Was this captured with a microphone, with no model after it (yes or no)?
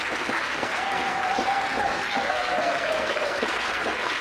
no